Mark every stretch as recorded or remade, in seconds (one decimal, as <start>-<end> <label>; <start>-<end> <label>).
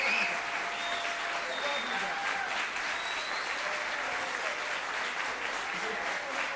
0.0-6.6 recorded